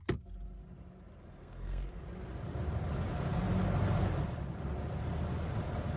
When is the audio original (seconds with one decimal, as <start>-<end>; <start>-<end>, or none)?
0.0-1.4; 2.0-6.0